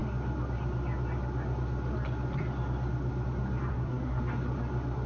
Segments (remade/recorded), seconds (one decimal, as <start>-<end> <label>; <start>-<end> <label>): 0.0-3.7 recorded; 3.7-4.2 remade; 4.2-5.1 recorded